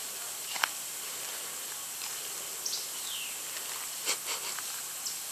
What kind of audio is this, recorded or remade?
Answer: recorded